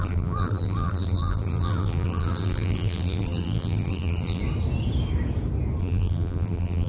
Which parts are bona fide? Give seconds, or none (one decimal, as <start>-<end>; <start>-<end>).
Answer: 4.4-5.8